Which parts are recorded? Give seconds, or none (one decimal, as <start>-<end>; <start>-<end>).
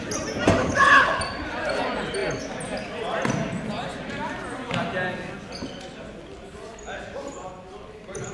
0.0-0.6; 1.2-8.3